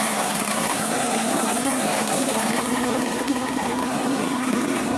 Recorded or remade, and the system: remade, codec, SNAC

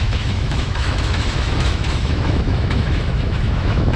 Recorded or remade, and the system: remade, autoencoder, DAC-VAE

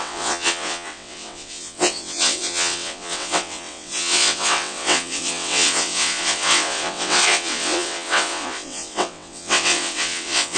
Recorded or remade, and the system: remade, vocoder, WaveNeXt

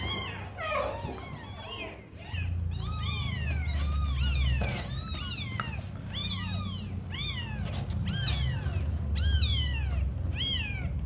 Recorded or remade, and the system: recorded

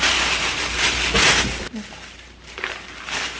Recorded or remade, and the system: recorded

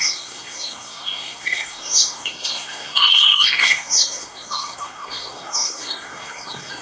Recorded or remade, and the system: remade, codec, SNAC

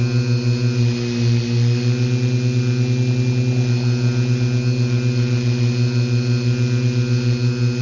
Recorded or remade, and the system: recorded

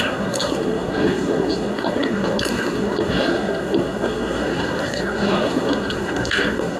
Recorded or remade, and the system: remade, codec, SNAC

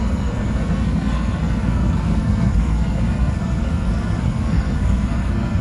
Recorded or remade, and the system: remade, codec, SNAC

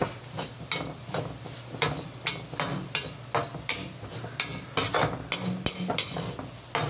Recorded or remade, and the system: recorded